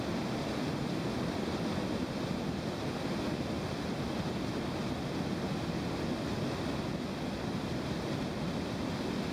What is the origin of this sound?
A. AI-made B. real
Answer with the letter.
B